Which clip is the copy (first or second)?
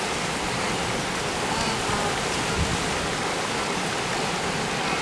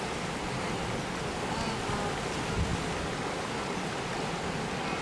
first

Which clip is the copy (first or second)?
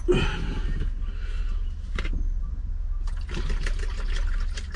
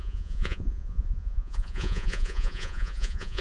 second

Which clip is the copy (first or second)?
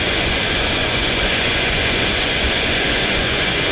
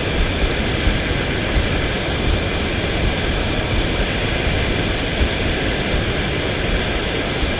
first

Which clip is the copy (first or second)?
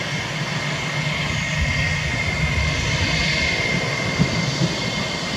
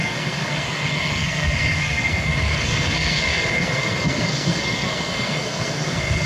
second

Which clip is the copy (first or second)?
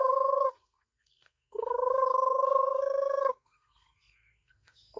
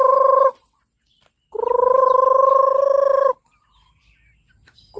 first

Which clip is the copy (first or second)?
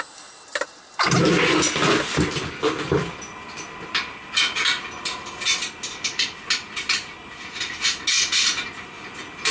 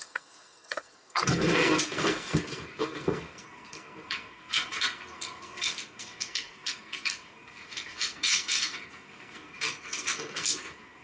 second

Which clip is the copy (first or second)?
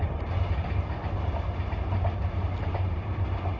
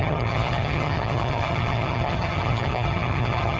second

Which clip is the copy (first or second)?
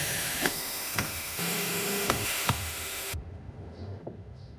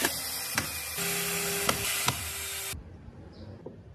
first